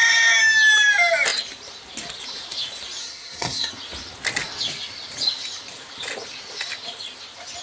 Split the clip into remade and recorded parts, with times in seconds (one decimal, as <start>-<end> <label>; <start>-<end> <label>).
0.0-3.0 recorded; 3.0-3.7 remade; 3.7-7.6 recorded